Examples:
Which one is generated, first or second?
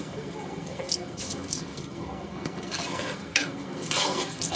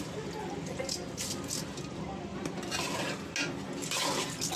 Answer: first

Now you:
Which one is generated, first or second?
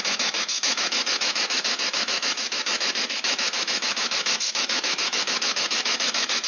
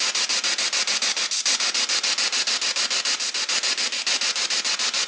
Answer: first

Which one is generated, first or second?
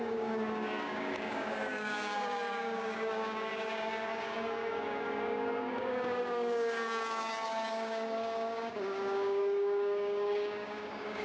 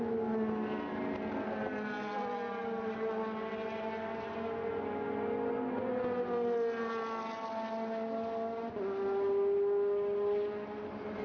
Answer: first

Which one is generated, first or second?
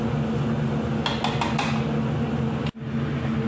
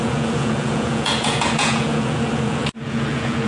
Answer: second